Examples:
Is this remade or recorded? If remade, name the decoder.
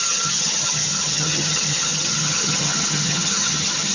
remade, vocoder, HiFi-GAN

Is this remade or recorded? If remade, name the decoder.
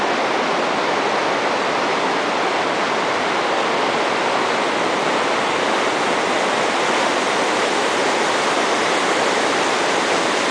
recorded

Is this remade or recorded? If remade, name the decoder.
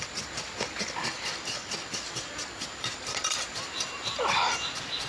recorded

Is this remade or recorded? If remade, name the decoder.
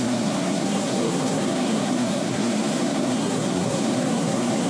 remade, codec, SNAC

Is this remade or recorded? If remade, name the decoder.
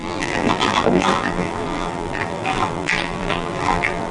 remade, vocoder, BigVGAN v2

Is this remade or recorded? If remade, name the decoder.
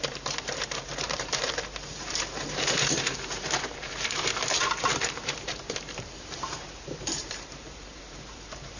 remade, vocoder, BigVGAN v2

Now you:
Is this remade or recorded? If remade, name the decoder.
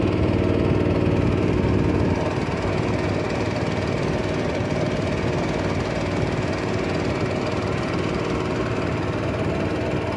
recorded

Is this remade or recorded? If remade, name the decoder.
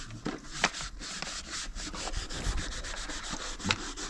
recorded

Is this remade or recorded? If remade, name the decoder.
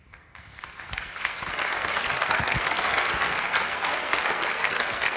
remade, codec, SNAC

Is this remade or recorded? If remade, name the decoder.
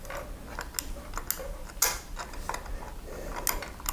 recorded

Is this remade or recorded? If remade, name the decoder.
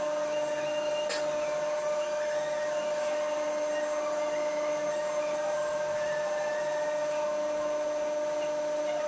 recorded